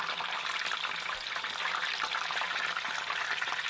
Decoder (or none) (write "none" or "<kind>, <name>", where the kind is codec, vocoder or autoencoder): none